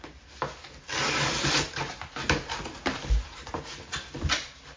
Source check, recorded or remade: recorded